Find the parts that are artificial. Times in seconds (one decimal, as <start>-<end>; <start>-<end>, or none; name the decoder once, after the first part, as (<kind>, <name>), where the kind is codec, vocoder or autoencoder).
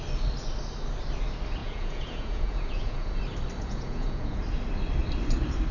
1.6-3.2 (vocoder, Vocos); 3.6-4.4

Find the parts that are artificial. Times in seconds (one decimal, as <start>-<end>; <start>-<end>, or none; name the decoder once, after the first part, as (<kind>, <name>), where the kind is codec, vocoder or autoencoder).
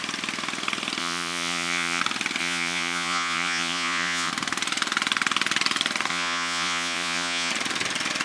1.0-2.0 (vocoder, Vocos); 2.4-4.3; 6.1-7.5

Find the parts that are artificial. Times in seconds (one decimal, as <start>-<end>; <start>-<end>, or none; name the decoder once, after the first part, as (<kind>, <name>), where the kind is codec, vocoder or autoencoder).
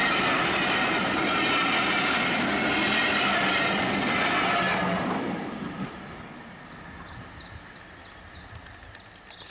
none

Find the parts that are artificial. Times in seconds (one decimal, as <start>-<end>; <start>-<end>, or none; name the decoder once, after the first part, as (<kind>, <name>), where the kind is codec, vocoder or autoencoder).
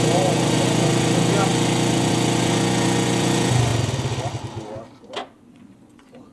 0.0-3.7 (vocoder, Vocos); 5.5-6.3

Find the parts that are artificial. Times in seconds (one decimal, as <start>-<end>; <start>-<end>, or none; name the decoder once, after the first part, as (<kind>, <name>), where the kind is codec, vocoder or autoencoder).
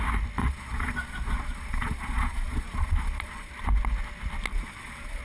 0.4-3.5 (vocoder, Vocos); 4.5-5.2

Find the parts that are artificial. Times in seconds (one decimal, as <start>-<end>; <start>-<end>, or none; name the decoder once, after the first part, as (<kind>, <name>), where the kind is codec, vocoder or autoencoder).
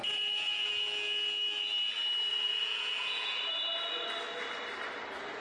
2.3-3.4 (vocoder, Vocos)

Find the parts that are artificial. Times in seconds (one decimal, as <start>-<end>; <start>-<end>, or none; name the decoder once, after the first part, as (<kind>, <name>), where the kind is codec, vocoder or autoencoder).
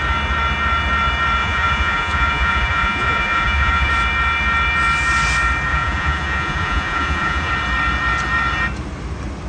1.4-3.9 (vocoder, Vocos); 5.7-7.5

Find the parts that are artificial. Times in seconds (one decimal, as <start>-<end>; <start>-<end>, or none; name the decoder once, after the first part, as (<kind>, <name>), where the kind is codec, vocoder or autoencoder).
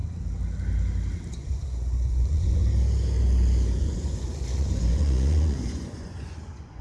1.3-2.6 (vocoder, Vocos); 3.8-6.8